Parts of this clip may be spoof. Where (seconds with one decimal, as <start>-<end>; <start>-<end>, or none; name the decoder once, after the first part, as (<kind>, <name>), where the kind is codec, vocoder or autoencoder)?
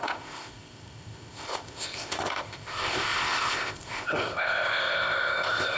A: 0.0-5.8 (codec, ZipCodec)